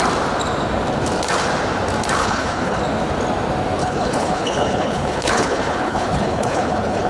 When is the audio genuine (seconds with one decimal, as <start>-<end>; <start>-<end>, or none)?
0.0-2.2; 2.8-3.8